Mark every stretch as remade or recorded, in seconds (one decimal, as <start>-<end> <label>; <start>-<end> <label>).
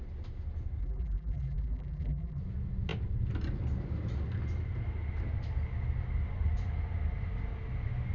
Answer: 0.0-0.8 recorded; 0.8-2.4 remade; 2.4-8.1 recorded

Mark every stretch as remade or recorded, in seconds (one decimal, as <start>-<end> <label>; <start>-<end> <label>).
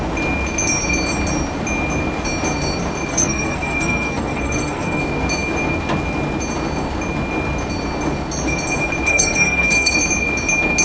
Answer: 0.0-3.1 recorded; 3.1-5.0 remade; 5.0-9.1 recorded; 9.1-9.9 remade; 9.9-10.8 recorded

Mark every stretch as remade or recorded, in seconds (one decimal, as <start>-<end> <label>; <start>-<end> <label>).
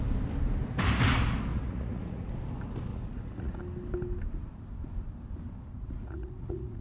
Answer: 0.0-1.5 recorded; 1.5-2.3 remade; 2.3-2.9 recorded; 2.9-3.6 remade; 3.6-5.7 recorded; 5.7-6.8 remade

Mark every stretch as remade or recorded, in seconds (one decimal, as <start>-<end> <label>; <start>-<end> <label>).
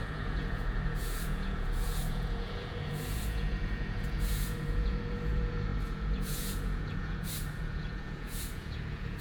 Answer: 0.0-9.2 remade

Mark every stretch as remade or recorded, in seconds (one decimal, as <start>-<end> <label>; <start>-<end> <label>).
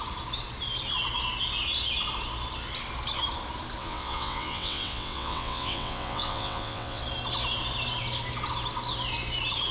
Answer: 0.0-3.8 recorded; 3.8-7.0 remade; 7.0-9.7 recorded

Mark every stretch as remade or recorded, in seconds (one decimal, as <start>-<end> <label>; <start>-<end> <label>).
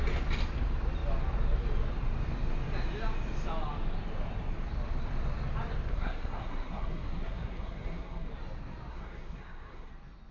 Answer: 0.0-5.9 recorded; 5.9-8.3 remade; 8.3-8.9 recorded; 8.9-9.9 remade; 9.9-10.3 recorded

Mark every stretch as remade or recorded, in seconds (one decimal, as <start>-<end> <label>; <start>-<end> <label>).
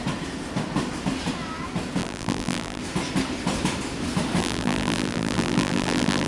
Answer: 0.0-2.0 recorded; 2.0-2.8 remade; 2.8-4.4 recorded; 4.4-6.3 remade